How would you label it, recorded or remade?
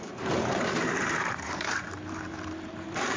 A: remade